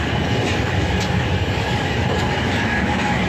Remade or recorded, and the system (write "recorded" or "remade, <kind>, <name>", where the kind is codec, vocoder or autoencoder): remade, codec, DAC